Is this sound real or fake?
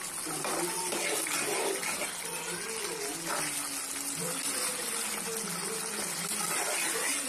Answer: real